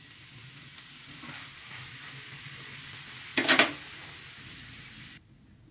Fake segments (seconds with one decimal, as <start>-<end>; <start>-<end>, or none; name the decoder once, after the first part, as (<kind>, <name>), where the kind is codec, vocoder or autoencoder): none